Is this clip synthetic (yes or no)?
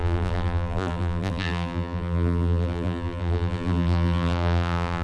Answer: yes